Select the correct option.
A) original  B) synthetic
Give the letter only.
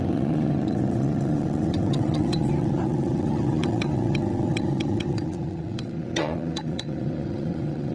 B